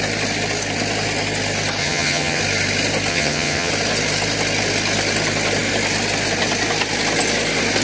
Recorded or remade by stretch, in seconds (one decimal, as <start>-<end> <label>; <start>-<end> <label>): 0.0-1.8 recorded; 1.8-2.4 remade; 2.4-3.1 recorded; 3.1-3.7 remade; 3.7-7.8 recorded